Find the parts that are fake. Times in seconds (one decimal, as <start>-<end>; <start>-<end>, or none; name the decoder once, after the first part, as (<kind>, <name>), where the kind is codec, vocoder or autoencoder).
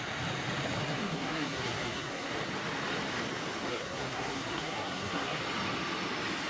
0.8-2.3 (codec, SNAC); 3.6-5.4